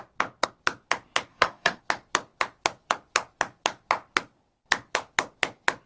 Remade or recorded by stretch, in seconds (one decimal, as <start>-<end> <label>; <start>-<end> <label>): 0.0-1.3 recorded; 1.3-1.8 remade; 1.8-5.9 recorded